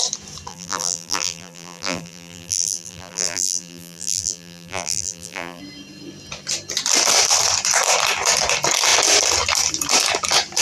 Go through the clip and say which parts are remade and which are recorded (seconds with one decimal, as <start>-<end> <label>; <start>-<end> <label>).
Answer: 0.0-0.5 recorded; 0.5-5.6 remade; 5.6-10.6 recorded